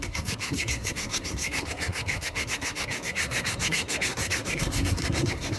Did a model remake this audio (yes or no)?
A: yes